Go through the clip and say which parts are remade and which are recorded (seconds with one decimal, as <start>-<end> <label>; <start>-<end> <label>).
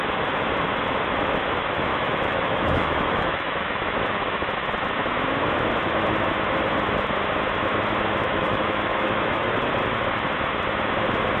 0.0-1.9 recorded; 1.9-4.5 remade; 4.5-8.2 recorded; 8.2-9.5 remade; 9.5-11.4 recorded